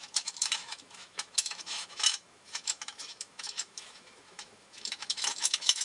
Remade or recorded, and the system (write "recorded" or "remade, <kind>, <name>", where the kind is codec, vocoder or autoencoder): remade, autoencoder, DAC-VAE